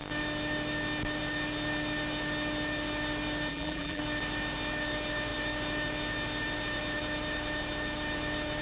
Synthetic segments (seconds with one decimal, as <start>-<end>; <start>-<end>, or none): 3.5-4.0